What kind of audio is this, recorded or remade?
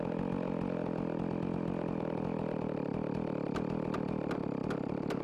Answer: recorded